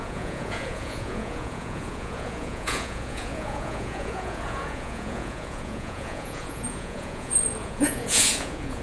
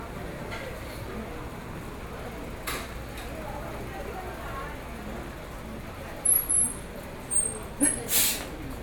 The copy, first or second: first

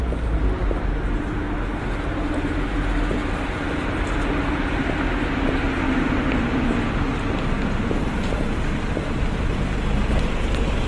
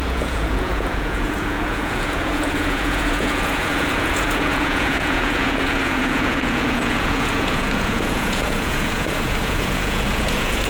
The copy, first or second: second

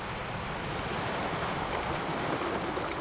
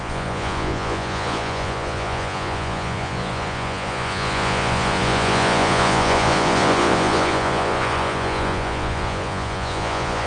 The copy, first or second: second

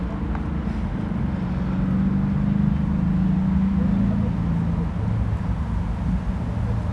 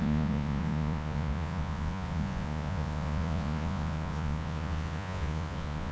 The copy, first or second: second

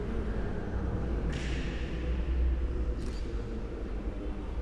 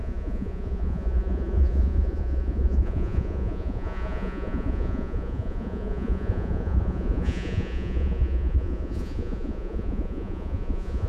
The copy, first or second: second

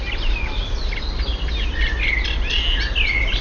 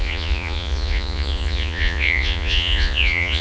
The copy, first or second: second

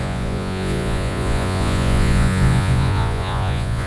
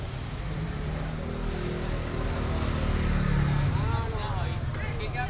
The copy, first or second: first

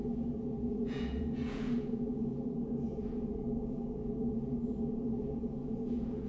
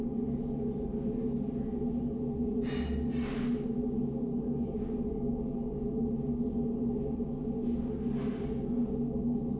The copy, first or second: first